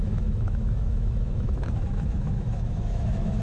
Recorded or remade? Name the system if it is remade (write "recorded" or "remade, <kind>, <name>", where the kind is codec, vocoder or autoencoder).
remade, autoencoder, DAC-VAE